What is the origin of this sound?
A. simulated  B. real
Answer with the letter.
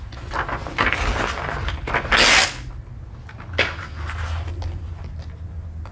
B